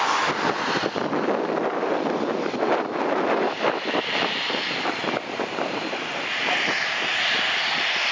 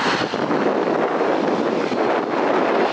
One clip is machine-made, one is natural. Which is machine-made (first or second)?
first